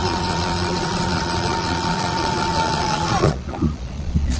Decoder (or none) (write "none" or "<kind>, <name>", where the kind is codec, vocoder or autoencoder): vocoder, Vocos